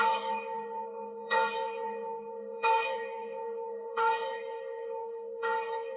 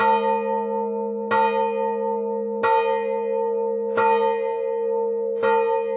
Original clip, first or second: second